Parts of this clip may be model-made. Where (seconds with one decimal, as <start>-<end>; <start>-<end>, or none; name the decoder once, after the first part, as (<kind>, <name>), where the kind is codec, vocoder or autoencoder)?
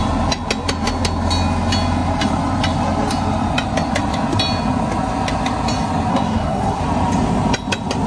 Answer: 6.1-6.8 (codec, SNAC)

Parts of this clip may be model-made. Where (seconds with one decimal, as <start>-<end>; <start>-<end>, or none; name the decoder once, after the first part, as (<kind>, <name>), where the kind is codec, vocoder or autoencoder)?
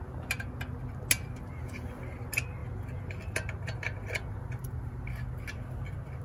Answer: none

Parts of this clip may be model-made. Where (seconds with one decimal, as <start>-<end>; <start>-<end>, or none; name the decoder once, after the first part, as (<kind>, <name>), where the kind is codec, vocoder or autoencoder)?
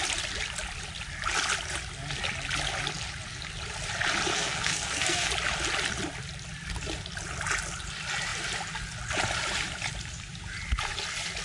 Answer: 4.3-5.3 (codec, SNAC)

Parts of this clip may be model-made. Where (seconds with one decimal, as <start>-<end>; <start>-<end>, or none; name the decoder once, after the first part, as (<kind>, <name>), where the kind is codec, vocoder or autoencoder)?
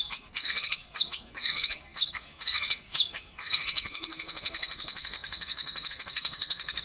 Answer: 0.0-6.8 (codec, SNAC)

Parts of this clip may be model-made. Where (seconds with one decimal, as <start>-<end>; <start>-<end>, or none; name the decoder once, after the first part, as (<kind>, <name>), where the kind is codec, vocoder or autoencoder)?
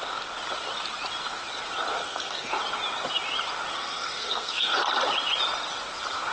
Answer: 2.0-2.5 (codec, SNAC); 3.7-4.8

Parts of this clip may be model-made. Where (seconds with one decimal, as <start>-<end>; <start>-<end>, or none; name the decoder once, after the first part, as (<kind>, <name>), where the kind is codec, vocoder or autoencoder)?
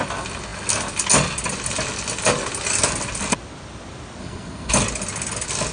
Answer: 4.2-4.7 (codec, SNAC)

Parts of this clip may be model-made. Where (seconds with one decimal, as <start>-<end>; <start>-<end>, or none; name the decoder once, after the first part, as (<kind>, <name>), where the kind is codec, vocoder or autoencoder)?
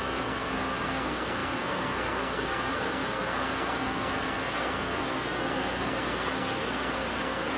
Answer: 0.0-7.6 (codec, SNAC)